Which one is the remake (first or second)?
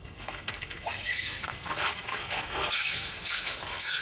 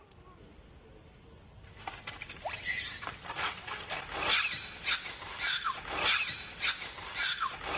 first